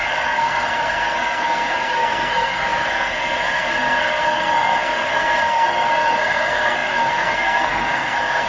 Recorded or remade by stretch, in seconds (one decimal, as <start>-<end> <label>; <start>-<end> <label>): 0.0-8.5 remade